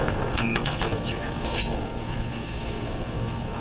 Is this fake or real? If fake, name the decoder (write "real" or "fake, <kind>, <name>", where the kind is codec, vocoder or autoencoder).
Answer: fake, codec, SNAC